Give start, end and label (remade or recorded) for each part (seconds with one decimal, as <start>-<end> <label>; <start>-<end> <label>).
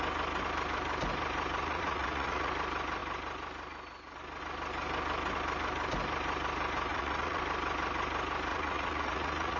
0.0-1.6 recorded; 1.6-2.5 remade; 2.5-6.9 recorded; 6.9-7.4 remade; 7.4-8.5 recorded; 8.5-9.6 remade